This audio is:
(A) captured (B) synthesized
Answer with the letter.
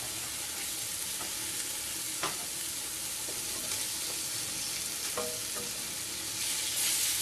A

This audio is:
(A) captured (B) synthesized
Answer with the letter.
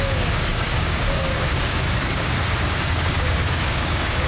B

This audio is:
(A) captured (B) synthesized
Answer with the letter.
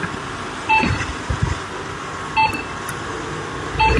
A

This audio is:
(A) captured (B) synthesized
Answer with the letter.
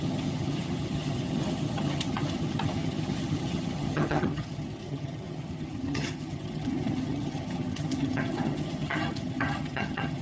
B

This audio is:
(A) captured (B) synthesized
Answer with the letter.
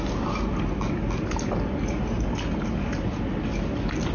A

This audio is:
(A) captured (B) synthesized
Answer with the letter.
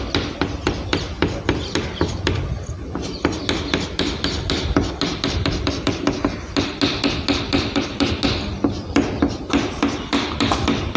A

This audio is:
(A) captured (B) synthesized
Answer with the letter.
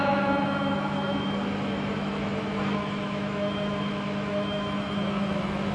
B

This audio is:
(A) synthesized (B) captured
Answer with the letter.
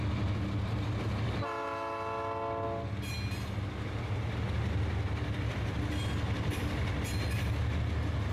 B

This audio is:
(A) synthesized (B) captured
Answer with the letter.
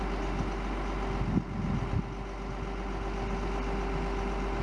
B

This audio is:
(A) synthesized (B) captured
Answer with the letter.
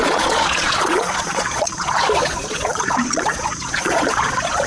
A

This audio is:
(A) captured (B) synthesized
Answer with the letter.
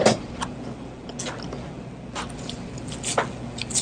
A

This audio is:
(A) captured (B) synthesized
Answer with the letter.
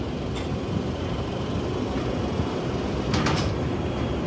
A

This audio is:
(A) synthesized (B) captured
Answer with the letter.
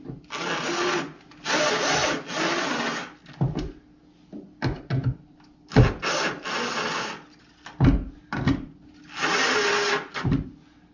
B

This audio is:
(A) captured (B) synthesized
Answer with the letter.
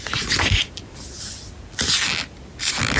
A